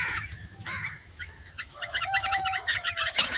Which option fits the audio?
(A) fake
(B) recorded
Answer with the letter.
A